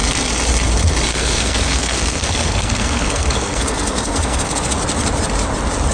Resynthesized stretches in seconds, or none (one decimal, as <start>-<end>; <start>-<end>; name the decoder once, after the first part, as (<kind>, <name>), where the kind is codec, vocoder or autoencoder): 1.1-4.6 (codec, SNAC)